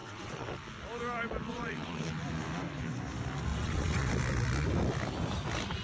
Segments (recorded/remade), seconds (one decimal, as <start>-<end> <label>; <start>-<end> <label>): 0.0-0.5 remade; 0.5-1.5 recorded; 1.5-2.1 remade; 2.1-3.5 recorded; 3.5-4.1 remade; 4.1-5.8 recorded